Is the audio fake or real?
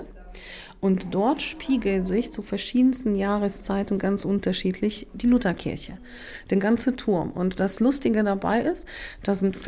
real